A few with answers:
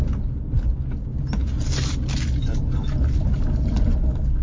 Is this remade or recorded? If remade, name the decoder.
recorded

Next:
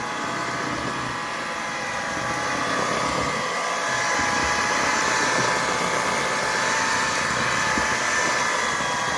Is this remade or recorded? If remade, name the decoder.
recorded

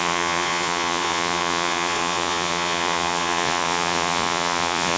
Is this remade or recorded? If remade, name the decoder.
remade, vocoder, Vocos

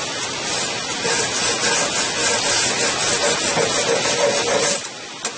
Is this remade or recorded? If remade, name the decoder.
recorded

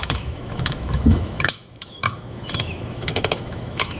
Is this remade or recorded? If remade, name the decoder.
remade, autoencoder, DAC-VAE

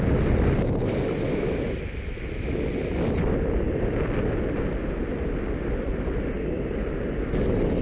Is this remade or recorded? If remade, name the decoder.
recorded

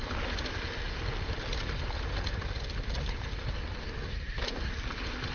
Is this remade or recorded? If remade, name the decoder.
recorded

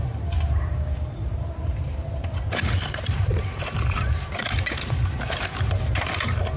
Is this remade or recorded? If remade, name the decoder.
remade, vocoder, BigVGAN v2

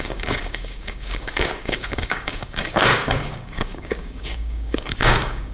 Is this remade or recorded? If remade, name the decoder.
remade, codec, DAC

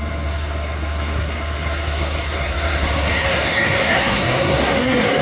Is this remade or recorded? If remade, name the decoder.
remade, codec, SNAC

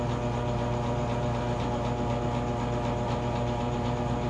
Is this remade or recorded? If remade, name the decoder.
recorded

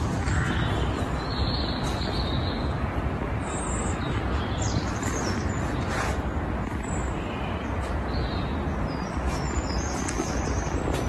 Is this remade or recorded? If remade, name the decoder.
recorded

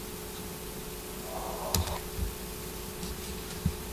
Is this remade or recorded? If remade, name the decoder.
recorded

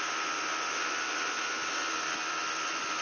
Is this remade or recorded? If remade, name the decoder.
remade, vocoder, BigVGAN v2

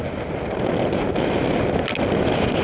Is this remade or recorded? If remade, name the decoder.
recorded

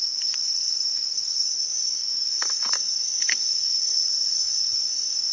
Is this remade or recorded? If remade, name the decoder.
remade, codec, SNAC